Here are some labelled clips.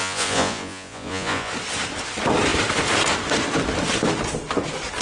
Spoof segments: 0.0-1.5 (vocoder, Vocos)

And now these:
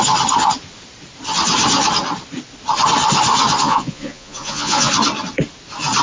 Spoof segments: 3.6-4.9 (vocoder, Vocos)

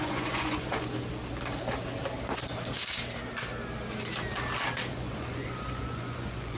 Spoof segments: 0.0-0.9 (vocoder, Vocos); 4.9-6.6